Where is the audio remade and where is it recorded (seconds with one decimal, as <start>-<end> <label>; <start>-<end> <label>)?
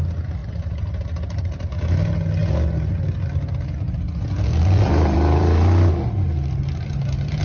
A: 0.0-0.4 recorded; 0.4-1.7 remade; 1.7-4.5 recorded; 4.5-5.9 remade; 5.9-7.4 recorded